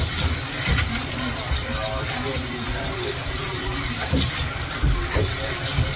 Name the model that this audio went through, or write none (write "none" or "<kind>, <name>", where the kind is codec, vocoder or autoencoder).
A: vocoder, BigVGAN v2